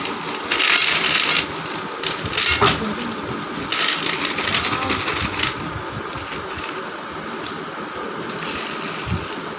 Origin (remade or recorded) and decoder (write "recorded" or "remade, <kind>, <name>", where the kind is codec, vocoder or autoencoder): recorded